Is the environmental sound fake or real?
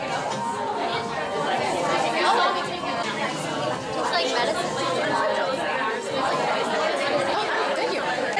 real